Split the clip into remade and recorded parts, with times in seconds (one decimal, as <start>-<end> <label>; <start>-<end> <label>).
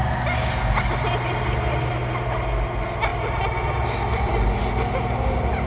0.0-5.7 recorded